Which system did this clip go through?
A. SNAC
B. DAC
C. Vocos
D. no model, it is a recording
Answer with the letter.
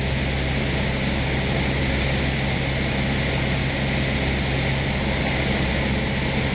D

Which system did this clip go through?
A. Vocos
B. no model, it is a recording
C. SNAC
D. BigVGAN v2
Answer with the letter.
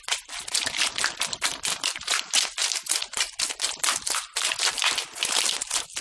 B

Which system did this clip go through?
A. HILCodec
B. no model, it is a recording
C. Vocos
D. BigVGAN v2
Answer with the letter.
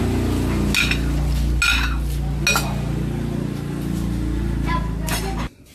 B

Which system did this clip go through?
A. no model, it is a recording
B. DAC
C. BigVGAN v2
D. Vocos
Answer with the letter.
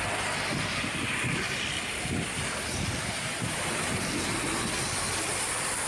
A